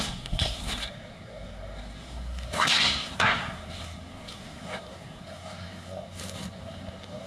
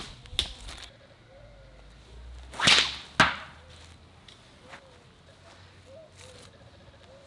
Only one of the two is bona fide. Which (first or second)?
second